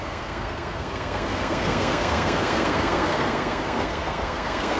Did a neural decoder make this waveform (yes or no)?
yes